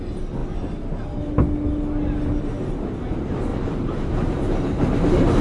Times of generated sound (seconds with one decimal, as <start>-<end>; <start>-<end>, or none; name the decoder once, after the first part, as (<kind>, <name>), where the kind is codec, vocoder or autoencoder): none

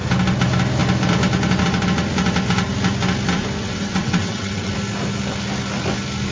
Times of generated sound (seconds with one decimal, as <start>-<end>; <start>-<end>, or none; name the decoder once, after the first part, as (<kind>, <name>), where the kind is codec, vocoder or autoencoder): 3.6-4.7 (vocoder, WaveNeXt)